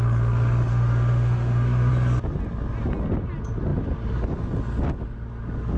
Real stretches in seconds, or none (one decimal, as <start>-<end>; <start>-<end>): 0.0-0.7; 1.9-5.8